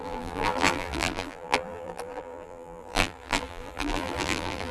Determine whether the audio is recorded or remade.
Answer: remade